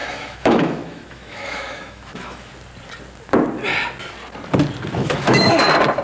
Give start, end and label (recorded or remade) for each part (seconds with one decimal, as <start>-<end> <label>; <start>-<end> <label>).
0.0-2.5 remade; 2.5-5.0 recorded; 5.0-5.5 remade; 5.5-6.0 recorded